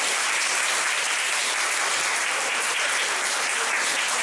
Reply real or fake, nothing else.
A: fake